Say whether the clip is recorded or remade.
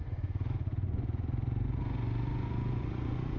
remade